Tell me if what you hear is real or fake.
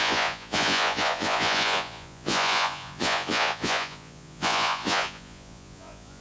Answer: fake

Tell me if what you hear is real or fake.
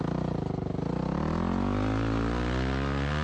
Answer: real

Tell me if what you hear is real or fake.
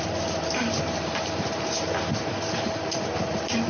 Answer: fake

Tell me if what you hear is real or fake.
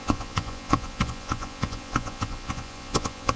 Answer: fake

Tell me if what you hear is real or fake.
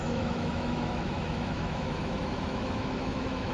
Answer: fake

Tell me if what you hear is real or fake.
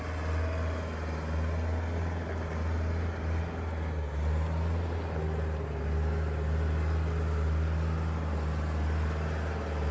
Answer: real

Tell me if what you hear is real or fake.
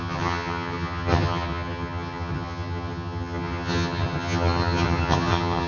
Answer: fake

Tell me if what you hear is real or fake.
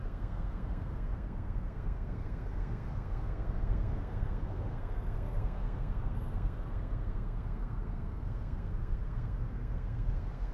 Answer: fake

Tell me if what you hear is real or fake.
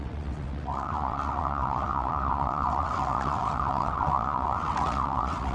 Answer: fake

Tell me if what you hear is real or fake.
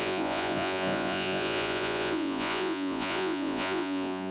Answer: fake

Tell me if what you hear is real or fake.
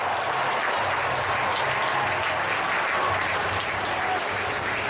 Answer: real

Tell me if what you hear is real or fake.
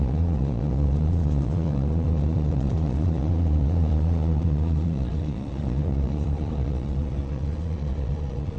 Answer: fake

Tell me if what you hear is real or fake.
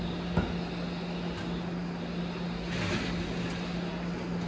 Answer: real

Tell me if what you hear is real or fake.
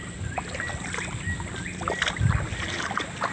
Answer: real